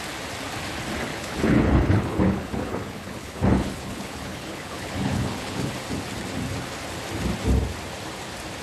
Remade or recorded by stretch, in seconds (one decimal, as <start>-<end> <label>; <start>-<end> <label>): 0.0-1.1 recorded; 1.1-5.7 remade; 5.7-8.6 recorded